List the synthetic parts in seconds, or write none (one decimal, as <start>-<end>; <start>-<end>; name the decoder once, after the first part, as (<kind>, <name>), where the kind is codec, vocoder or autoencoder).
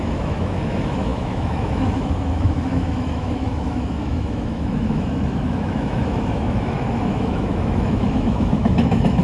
0.0-9.2 (autoencoder, DAC-VAE)